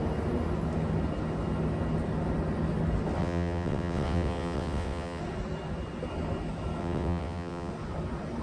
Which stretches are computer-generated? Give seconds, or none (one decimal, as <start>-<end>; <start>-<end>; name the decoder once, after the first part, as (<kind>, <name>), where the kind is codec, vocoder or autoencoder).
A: 3.2-5.2 (vocoder, WaveNeXt); 6.8-7.7